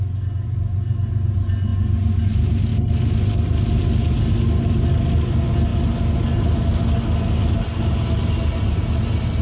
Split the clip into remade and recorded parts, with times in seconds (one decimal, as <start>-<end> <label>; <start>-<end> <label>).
0.0-9.4 recorded